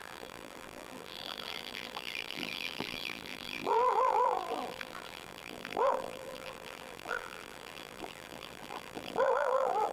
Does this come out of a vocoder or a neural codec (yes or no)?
yes